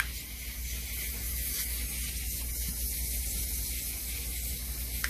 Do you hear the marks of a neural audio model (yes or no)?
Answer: no